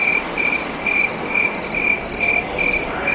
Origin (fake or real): real